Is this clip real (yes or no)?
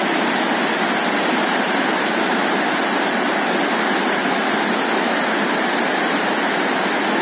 yes